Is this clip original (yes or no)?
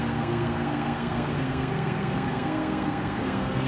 no